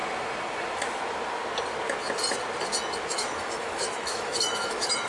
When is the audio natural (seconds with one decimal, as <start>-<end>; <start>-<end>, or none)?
0.0-3.1